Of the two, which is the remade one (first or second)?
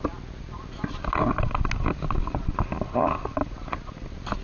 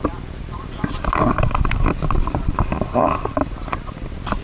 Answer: second